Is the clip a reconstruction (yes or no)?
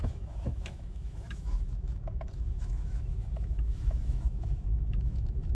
yes